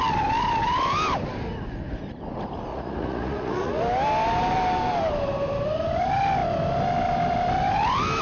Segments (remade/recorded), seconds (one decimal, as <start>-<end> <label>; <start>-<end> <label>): 0.0-2.7 recorded; 2.7-3.8 remade; 3.8-8.2 recorded